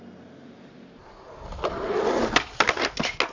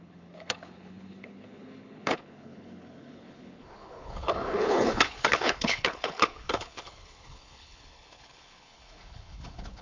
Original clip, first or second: first